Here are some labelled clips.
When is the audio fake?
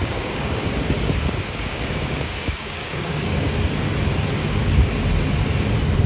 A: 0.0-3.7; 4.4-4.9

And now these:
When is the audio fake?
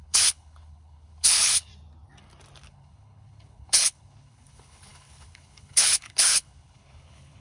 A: 0.0-1.7; 2.7-7.4